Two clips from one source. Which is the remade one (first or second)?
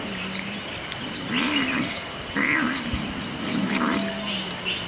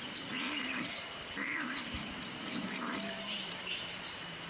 second